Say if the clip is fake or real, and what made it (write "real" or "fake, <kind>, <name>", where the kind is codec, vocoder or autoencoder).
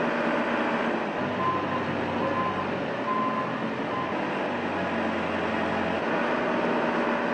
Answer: real